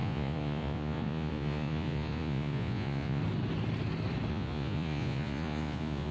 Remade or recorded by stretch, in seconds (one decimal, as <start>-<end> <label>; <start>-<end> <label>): 0.0-3.2 remade; 3.2-4.3 recorded; 4.3-6.1 remade